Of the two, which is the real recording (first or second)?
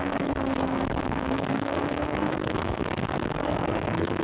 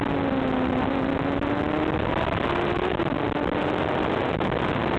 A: second